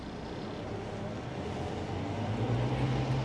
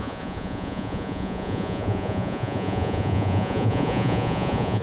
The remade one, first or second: second